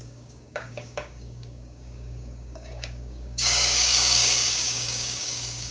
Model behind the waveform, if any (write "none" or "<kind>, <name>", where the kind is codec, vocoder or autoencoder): codec, DAC